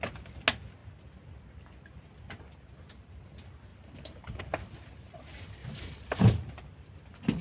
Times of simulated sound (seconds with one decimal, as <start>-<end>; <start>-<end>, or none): 3.7-4.4; 5.6-6.3